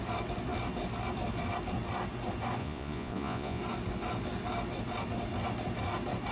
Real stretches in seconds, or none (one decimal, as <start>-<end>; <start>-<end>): 0.0-2.6; 3.6-6.3